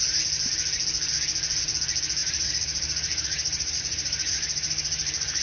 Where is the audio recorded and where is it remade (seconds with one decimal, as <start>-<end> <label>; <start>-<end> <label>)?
0.0-2.2 recorded; 2.2-5.4 remade